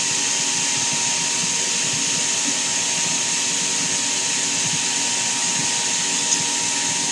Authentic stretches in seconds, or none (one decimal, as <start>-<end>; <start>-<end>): 0.0-7.1